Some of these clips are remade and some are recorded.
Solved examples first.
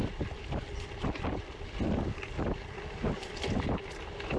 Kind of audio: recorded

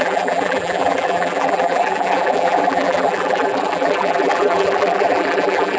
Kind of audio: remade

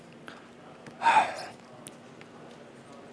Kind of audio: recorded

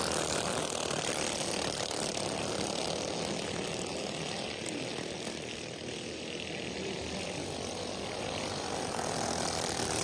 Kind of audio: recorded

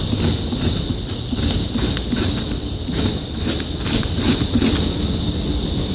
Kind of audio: recorded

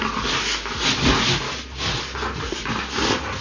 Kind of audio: recorded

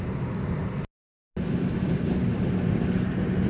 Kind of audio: recorded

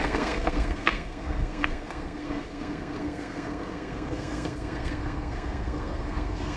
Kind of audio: remade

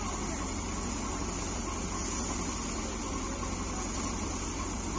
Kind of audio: recorded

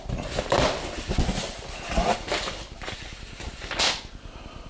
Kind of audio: recorded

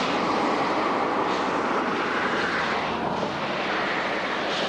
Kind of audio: recorded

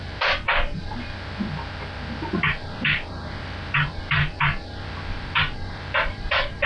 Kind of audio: remade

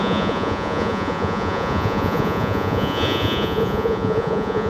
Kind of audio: remade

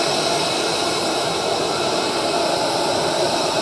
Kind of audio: recorded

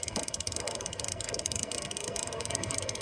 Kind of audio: remade